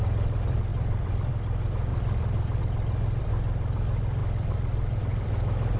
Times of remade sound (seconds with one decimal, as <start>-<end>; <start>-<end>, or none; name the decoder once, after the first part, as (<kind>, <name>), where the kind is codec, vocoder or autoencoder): 0.7-1.3 (vocoder, BigVGAN v2); 1.9-2.6; 4.2-5.0

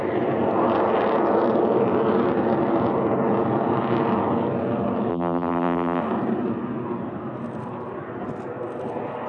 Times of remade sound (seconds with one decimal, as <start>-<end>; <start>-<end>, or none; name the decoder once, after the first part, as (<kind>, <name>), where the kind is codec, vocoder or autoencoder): 5.1-6.0 (vocoder, BigVGAN v2)